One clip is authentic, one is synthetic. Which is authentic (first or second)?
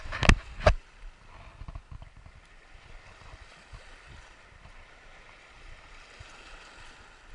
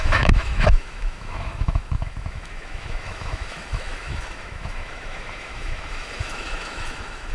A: first